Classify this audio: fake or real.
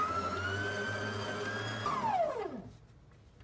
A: real